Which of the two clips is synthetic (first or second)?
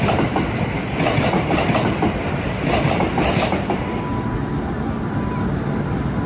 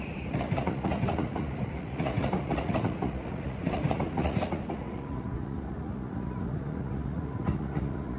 second